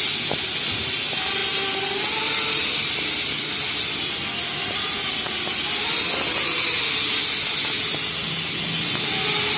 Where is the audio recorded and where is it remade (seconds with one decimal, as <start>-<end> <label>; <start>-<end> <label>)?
0.0-9.6 recorded